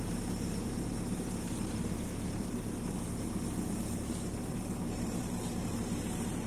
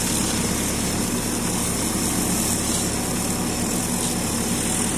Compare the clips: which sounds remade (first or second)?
first